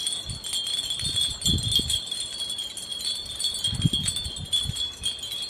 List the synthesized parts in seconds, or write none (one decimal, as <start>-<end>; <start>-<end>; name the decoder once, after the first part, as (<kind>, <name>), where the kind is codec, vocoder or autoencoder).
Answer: none